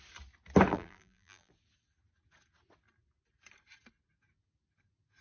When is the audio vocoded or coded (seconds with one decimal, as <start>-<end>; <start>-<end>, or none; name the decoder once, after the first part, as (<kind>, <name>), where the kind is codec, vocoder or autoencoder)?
0.7-1.5 (vocoder, BigVGAN v2)